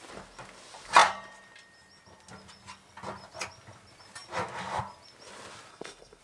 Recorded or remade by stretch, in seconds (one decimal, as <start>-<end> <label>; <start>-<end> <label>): 0.0-5.7 recorded; 5.7-6.2 remade